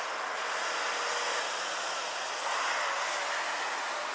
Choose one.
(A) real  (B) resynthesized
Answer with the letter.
A